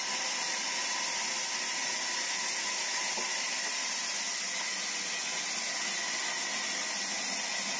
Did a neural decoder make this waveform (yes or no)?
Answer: no